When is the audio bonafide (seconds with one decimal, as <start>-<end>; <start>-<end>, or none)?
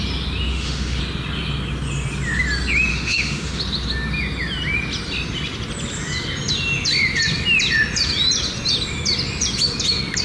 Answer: 0.0-0.5; 1.0-2.9; 3.6-10.2